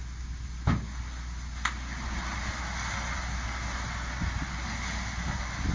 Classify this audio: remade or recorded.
recorded